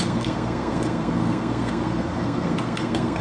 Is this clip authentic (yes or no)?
no